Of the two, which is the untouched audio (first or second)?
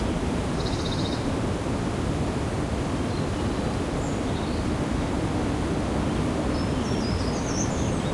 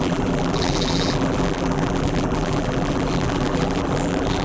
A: first